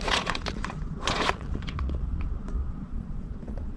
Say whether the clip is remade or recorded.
remade